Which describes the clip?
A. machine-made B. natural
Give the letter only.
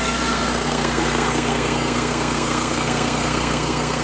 A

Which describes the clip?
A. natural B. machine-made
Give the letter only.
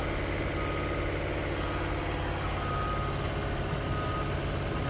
A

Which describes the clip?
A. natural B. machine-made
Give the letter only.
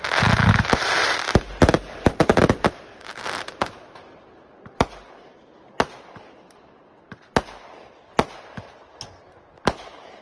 A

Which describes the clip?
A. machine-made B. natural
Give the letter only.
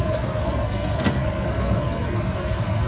A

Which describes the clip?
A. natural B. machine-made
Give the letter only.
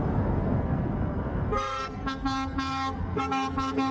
B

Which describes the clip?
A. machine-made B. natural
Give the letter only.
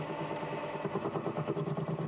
B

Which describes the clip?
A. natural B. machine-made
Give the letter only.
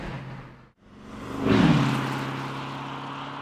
A